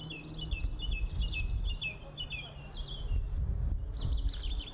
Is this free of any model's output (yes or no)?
yes